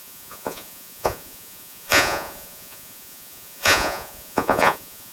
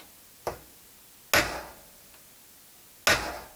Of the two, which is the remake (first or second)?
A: first